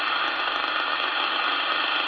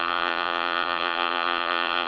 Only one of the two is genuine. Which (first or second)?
first